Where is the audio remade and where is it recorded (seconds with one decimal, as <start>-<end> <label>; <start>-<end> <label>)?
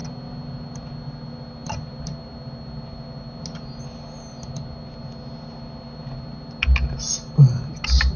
0.0-8.2 recorded